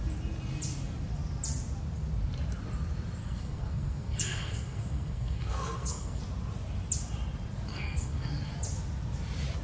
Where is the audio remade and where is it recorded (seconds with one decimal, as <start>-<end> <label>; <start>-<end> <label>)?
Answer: 0.0-3.2 recorded; 3.2-6.2 remade; 6.2-7.7 recorded; 7.7-8.3 remade; 8.3-9.6 recorded